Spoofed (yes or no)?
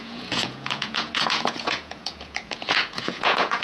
yes